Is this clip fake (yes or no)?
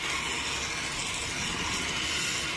no